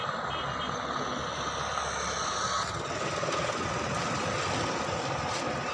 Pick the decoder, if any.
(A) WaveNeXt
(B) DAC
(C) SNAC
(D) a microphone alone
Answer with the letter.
D